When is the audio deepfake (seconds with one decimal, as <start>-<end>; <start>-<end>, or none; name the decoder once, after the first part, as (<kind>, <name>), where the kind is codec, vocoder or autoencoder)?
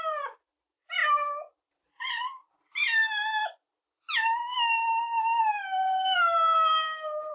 0.0-1.0 (vocoder, BigVGAN v2); 1.7-2.4; 5.4-7.3